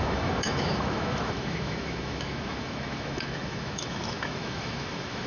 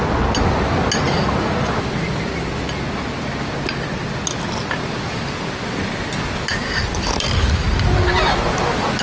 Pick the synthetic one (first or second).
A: first